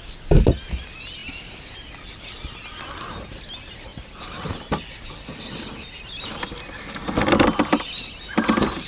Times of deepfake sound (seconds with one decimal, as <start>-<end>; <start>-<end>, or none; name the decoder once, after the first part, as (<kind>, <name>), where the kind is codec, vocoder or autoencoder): none